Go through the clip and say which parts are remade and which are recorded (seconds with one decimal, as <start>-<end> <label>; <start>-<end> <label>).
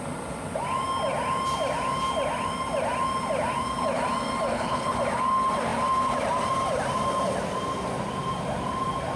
0.0-4.5 recorded; 4.5-5.0 remade; 5.0-9.2 recorded